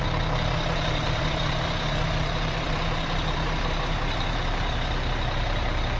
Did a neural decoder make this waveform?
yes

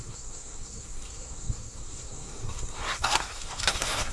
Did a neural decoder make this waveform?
yes